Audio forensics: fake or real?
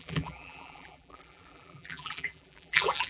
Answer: fake